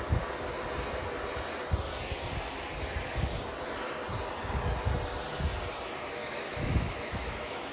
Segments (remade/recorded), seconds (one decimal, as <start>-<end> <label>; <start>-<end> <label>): 0.0-6.2 recorded; 6.2-7.7 remade